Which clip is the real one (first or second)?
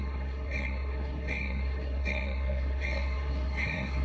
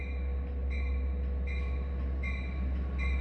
second